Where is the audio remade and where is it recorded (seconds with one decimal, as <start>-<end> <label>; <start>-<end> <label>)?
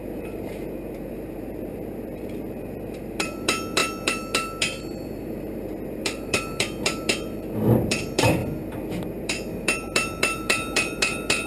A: 0.0-8.4 remade; 8.4-9.2 recorded; 9.2-11.5 remade